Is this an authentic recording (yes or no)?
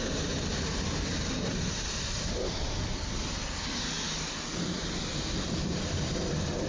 yes